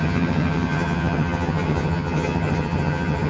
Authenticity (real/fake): fake